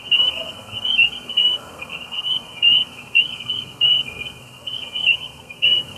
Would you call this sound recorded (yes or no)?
no